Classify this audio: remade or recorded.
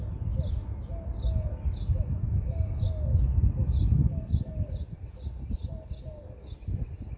recorded